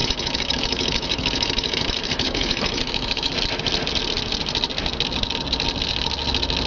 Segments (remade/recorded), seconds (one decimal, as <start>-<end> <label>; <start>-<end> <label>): 0.0-3.3 remade; 3.3-6.7 recorded